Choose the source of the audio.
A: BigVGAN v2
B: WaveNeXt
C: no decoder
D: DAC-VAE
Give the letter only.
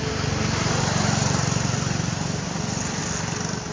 C